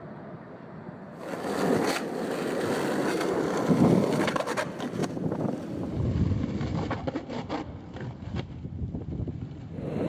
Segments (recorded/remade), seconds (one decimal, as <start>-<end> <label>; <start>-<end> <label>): 0.0-5.0 recorded; 5.0-5.5 remade; 5.5-10.1 recorded